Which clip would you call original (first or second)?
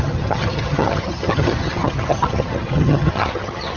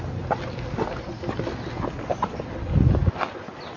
second